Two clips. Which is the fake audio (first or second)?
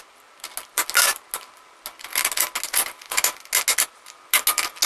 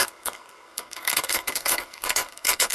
second